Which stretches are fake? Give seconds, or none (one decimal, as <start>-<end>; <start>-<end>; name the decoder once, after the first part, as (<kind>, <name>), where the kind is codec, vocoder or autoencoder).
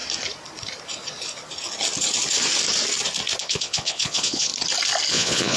3.4-4.5 (vocoder, Vocos); 5.1-5.6